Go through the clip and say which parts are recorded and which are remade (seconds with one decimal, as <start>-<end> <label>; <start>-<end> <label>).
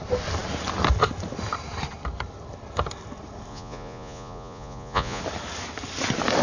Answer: 0.0-3.5 recorded; 3.5-5.2 remade; 5.2-6.4 recorded